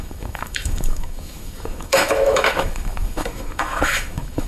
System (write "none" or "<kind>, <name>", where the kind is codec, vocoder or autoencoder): autoencoder, DAC-VAE